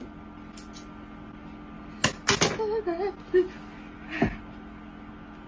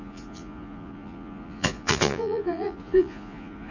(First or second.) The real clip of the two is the first